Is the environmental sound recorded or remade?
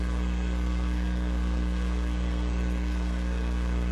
remade